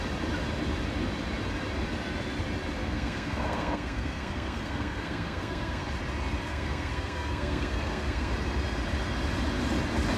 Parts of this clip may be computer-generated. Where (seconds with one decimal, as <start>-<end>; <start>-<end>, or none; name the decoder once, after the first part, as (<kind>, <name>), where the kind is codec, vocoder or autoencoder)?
2.8-5.9 (codec, SNAC); 6.5-8.3